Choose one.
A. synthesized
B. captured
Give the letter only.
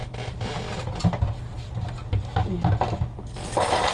B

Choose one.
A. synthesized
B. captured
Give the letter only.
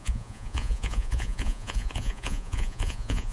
A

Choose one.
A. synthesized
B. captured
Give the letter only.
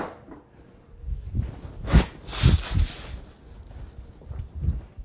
B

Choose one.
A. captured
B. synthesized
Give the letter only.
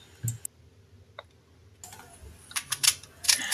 A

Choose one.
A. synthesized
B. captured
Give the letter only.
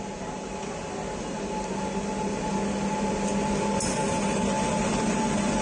B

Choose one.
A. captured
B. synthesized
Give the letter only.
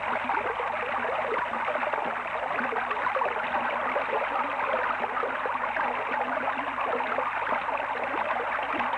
A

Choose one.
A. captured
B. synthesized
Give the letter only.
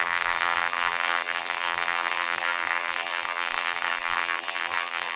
B